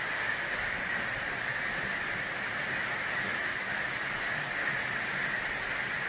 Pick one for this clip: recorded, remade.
recorded